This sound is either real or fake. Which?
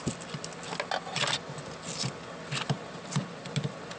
real